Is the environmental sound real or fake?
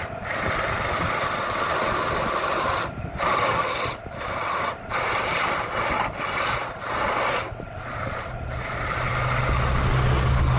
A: real